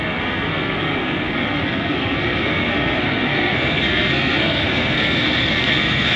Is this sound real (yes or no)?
no